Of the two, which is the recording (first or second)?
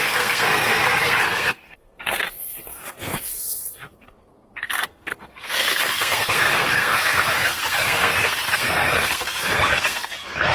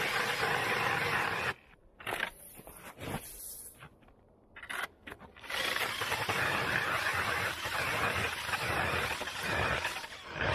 second